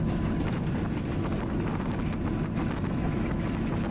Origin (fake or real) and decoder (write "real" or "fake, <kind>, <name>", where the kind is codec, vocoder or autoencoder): real